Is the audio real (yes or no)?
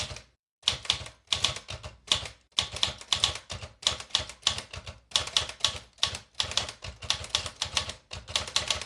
yes